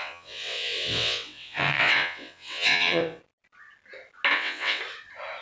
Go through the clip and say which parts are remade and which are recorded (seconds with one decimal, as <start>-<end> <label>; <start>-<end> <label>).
0.0-3.2 remade; 3.2-4.3 recorded; 4.3-4.8 remade; 4.8-5.4 recorded